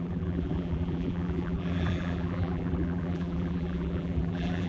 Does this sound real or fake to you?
fake